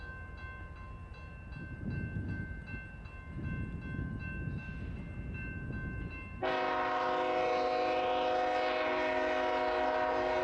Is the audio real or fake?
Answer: real